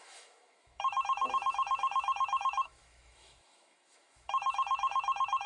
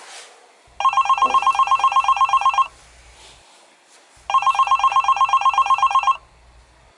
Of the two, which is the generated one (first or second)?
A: first